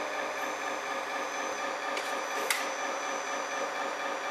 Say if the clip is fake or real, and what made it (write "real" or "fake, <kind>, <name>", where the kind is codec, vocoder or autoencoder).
fake, vocoder, BigVGAN v2